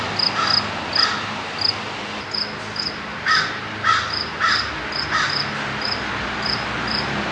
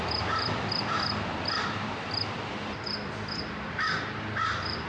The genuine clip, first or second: first